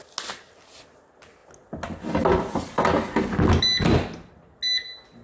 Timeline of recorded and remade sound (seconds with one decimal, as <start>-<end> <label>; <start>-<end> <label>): 0.0-5.2 recorded